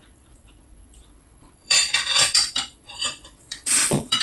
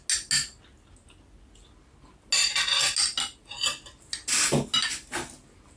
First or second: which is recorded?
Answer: second